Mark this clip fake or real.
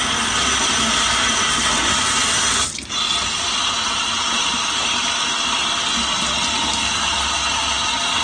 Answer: real